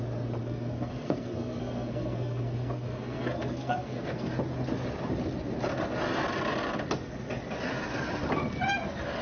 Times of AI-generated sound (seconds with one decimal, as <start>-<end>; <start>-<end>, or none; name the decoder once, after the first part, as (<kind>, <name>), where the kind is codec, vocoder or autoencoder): 0.4-4.3 (codec, SNAC)